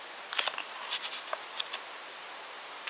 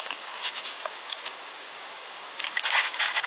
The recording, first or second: first